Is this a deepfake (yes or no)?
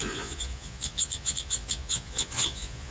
yes